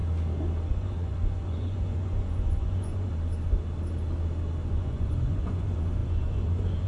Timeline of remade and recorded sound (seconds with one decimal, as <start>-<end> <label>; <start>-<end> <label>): 0.0-0.7 recorded; 0.7-3.1 remade; 3.1-4.7 recorded; 4.7-6.9 remade